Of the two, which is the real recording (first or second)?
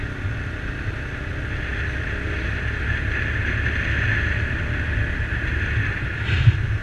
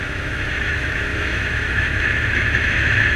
first